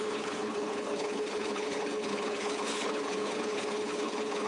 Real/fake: fake